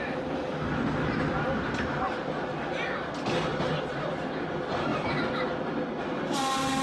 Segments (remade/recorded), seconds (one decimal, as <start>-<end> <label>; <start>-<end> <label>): 0.0-3.5 recorded; 3.5-4.1 remade; 4.1-6.8 recorded

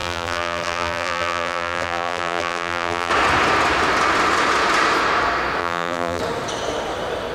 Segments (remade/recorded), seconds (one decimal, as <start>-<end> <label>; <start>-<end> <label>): 0.0-3.1 remade; 3.1-5.6 recorded; 5.6-6.2 remade; 6.2-7.3 recorded

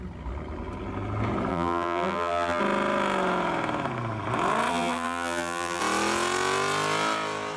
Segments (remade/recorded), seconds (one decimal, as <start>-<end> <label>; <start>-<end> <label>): 0.0-1.5 recorded; 1.5-2.6 remade; 2.6-4.7 recorded; 4.7-5.8 remade; 5.8-7.6 recorded